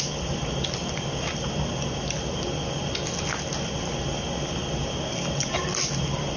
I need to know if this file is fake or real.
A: real